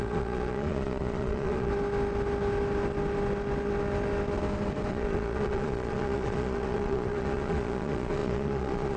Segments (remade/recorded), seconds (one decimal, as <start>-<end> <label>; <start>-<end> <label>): 0.0-1.7 remade; 1.7-4.9 recorded; 4.9-9.0 remade